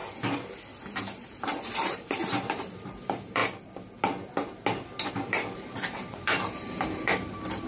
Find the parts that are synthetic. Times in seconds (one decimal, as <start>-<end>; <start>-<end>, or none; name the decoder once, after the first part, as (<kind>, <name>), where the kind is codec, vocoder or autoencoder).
0.8-3.4 (vocoder, BigVGAN v2); 5.1-7.7